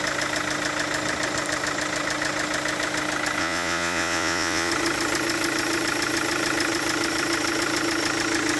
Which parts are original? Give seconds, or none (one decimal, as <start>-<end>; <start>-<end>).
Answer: 0.0-3.4; 4.7-8.6